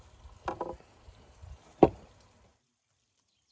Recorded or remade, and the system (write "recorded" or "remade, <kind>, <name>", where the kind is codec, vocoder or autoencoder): recorded